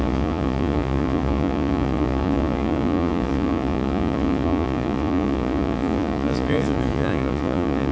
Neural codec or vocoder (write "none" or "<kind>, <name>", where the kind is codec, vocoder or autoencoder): vocoder, Vocos